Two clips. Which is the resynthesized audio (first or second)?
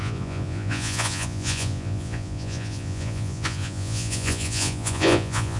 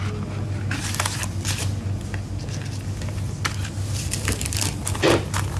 first